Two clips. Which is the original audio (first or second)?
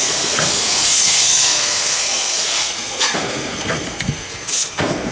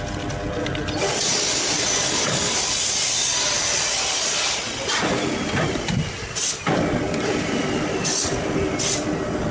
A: second